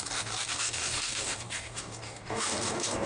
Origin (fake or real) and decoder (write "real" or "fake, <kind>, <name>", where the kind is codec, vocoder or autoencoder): fake, codec, DAC